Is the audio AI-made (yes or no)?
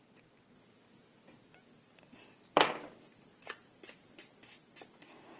no